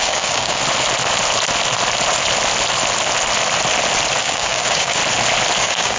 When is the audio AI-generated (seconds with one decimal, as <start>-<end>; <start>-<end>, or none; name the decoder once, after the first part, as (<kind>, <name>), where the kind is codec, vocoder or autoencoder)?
0.0-0.6 (codec, DAC); 4.2-5.0; 5.6-6.0